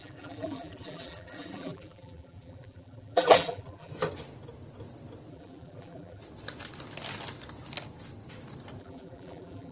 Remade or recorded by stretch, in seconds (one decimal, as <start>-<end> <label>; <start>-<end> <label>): 0.0-3.9 remade; 3.9-5.3 recorded; 5.3-6.2 remade; 6.2-8.8 recorded; 8.8-9.7 remade